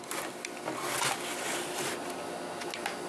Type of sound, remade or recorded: recorded